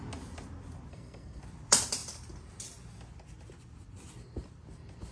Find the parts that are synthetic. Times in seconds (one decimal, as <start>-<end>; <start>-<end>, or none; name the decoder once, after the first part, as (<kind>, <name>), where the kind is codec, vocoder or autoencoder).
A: 0.9-1.4 (codec, SNAC)

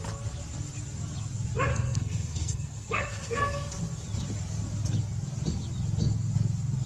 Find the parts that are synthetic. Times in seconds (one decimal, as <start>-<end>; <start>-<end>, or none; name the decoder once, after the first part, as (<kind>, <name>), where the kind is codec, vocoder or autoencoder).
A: 1.7-3.8 (codec, SNAC)

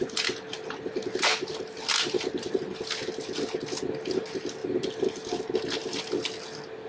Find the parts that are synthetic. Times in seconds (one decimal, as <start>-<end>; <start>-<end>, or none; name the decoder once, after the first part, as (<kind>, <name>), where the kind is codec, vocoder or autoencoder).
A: none

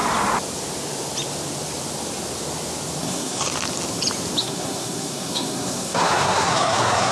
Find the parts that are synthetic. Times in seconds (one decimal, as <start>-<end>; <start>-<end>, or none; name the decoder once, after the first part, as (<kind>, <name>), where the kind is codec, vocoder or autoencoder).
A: 3.0-3.4 (codec, SNAC); 4.4-7.1

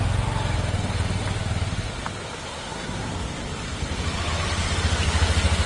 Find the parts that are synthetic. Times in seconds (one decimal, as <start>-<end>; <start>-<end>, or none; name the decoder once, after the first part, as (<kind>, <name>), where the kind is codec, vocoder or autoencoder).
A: 2.5-3.1 (codec, SNAC)

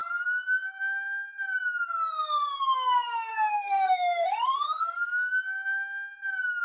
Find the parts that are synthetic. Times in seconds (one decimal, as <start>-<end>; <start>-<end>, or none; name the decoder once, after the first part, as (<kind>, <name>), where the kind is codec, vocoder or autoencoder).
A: 3.3-5.3 (codec, SNAC)

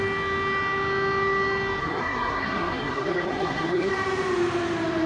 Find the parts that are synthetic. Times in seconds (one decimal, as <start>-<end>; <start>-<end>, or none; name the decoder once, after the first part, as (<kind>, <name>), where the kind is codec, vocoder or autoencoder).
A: 1.8-3.9 (codec, SNAC)

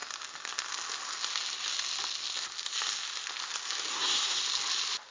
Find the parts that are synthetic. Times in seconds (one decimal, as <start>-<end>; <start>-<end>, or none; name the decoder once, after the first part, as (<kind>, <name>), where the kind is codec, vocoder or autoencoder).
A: 3.9-4.4 (codec, SNAC)